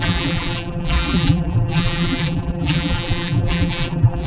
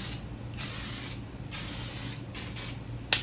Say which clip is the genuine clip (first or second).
second